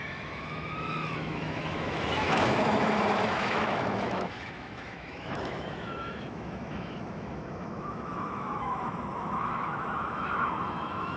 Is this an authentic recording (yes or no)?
no